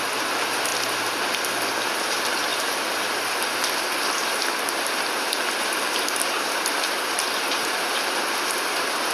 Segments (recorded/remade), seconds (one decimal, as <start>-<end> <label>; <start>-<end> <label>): 0.0-9.1 recorded